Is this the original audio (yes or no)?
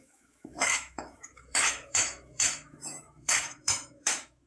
no